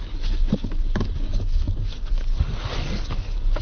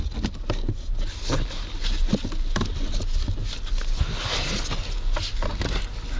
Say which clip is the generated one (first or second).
first